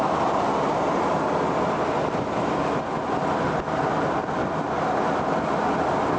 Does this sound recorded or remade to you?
recorded